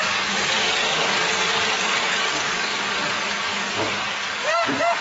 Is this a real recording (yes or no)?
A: no